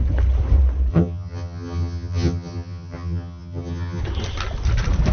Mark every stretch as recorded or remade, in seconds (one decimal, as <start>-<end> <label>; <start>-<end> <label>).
0.0-0.9 recorded; 0.9-4.0 remade; 4.0-5.1 recorded